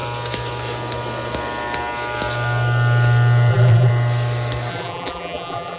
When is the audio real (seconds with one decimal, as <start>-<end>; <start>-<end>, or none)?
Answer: 0.0-3.5; 3.9-4.7